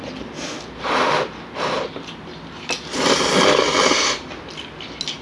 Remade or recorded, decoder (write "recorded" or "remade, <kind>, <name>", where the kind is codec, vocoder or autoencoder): recorded